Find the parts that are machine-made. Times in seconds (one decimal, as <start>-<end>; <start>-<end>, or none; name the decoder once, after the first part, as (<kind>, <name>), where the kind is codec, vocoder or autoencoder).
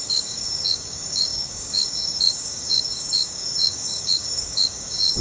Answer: 0.0-5.2 (codec, DAC)